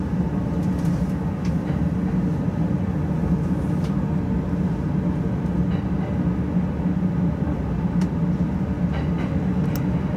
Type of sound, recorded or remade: recorded